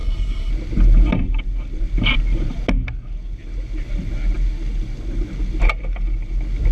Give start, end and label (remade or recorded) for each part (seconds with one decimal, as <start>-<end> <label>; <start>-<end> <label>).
0.0-0.5 remade; 0.5-6.7 recorded